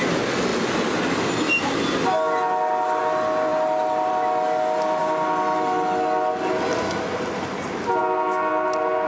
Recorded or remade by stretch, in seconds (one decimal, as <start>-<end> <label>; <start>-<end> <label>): 0.0-9.1 recorded

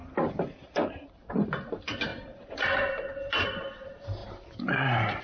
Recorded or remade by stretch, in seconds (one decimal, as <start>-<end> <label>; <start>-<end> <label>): 0.0-5.2 remade

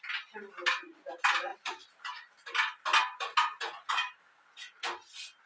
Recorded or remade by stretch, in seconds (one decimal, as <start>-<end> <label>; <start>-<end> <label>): 0.0-1.5 recorded; 1.5-2.3 remade; 2.3-5.5 recorded

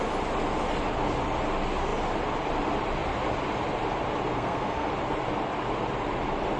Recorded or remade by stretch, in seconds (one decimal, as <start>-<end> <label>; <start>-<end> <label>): 0.0-4.3 recorded; 4.3-4.9 remade; 4.9-6.6 recorded

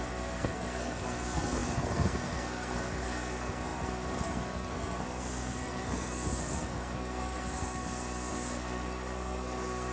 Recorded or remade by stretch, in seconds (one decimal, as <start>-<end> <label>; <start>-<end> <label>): 0.0-9.9 remade